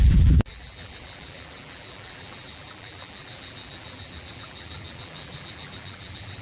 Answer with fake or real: fake